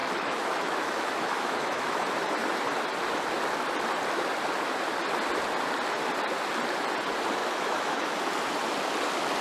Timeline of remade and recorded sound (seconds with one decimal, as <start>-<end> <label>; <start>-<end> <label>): 0.0-2.0 remade; 2.0-7.4 recorded; 7.4-8.2 remade; 8.2-9.4 recorded